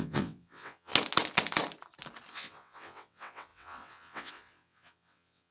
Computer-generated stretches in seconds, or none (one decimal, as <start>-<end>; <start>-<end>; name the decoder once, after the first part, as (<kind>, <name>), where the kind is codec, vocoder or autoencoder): 0.0-0.9 (vocoder, WaveNeXt); 2.3-5.5